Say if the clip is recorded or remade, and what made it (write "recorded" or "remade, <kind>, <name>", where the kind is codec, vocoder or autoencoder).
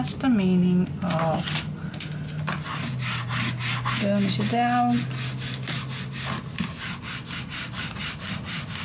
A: recorded